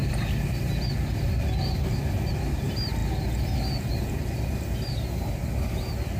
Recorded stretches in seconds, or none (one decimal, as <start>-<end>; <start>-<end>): 0.0-6.2